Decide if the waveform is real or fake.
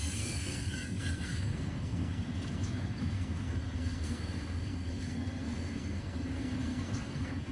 fake